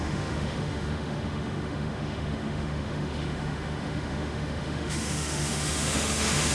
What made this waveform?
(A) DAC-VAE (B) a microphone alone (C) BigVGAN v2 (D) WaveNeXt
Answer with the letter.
A